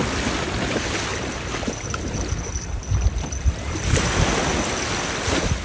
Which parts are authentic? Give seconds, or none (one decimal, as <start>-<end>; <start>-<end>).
0.0-5.6